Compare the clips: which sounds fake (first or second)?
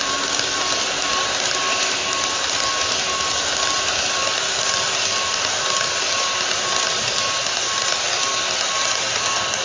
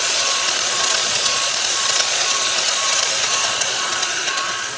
second